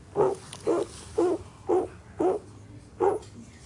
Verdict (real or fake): real